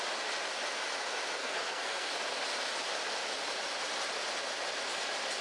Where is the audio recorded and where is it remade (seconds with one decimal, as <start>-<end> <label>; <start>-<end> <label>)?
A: 0.0-1.4 recorded; 1.4-2.1 remade; 2.1-5.4 recorded